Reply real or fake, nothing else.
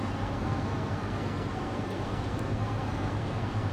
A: fake